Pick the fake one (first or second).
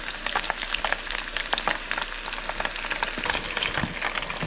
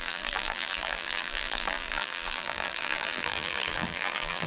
second